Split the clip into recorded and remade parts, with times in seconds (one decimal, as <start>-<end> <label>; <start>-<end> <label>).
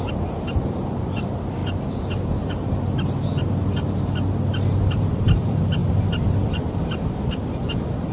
0.0-1.6 remade; 1.6-5.0 recorded; 5.0-5.8 remade; 5.8-8.1 recorded